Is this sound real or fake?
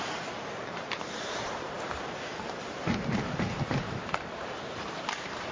fake